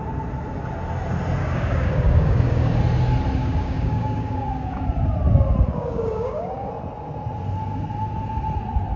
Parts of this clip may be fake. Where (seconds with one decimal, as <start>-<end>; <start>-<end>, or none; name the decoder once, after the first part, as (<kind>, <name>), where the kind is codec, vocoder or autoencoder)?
1.4-2.8 (codec, DAC); 3.4-4.9; 5.7-6.7